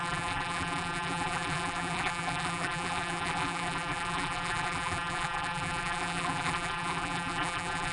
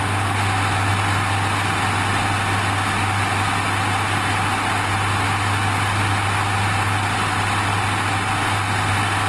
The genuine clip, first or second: second